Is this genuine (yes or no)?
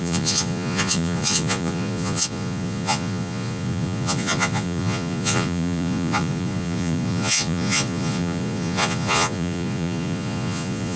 no